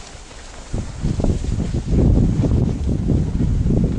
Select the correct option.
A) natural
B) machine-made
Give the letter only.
A